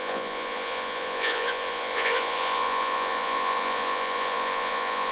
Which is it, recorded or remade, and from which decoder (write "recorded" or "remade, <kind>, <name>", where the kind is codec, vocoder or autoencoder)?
remade, vocoder, Vocos